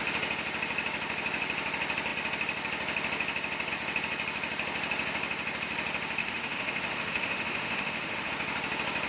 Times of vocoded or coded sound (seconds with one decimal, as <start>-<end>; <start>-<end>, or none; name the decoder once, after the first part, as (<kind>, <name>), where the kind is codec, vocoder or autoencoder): 6.2-8.3 (autoencoder, DAC-VAE)